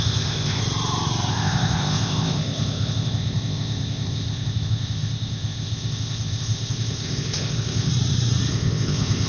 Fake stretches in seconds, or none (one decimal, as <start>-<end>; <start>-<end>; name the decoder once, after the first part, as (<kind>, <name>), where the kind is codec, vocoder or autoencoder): 0.0-0.6 (codec, ZipCodec); 1.3-7.9; 8.5-9.3